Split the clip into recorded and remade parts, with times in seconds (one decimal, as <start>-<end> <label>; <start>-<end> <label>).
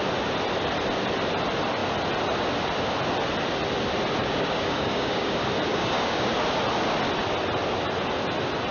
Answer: 0.0-4.2 recorded; 4.2-5.3 remade; 5.3-5.7 recorded; 5.7-6.3 remade; 6.3-8.7 recorded